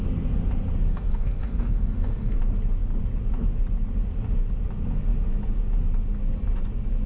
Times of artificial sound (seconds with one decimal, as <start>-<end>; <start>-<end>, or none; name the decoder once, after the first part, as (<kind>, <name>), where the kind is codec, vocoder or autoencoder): 0.9-2.4 (codec, SNAC)